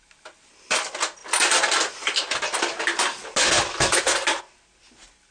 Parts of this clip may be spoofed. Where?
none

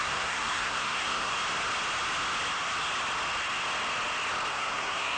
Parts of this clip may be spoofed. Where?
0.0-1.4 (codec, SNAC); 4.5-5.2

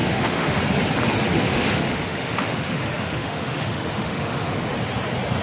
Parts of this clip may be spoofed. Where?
0.0-0.6 (autoencoder, DAC-VAE); 1.5-4.7

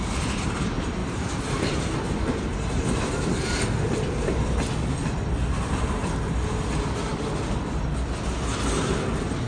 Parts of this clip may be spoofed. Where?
1.0-3.1 (vocoder, BigVGAN v2)

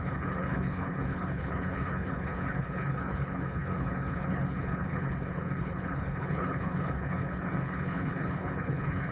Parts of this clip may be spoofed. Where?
0.0-9.1 (codec, HILCodec)